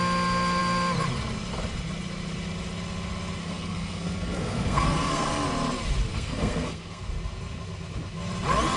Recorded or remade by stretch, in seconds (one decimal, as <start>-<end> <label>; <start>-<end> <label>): 0.0-3.4 recorded; 3.4-5.3 remade; 5.3-6.1 recorded; 6.1-7.0 remade; 7.0-8.8 recorded